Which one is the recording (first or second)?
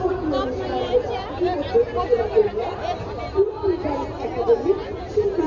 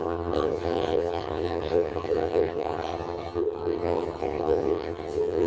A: first